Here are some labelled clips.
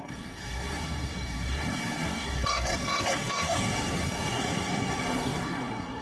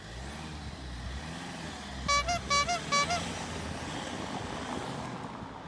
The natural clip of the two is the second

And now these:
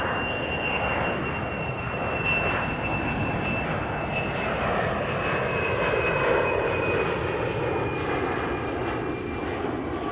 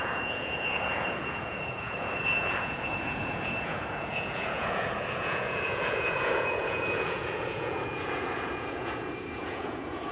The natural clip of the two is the first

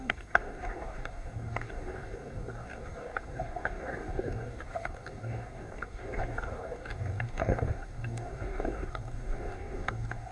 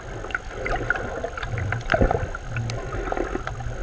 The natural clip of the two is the second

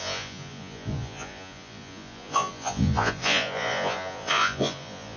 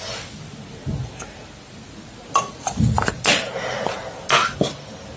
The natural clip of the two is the second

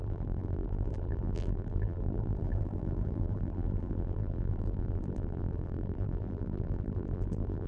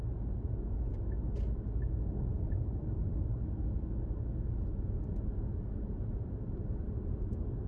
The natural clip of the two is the second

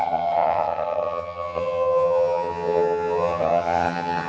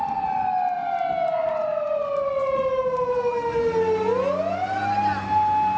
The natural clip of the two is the second